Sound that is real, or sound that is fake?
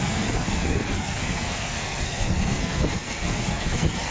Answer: fake